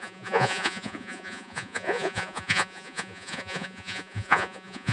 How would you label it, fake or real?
fake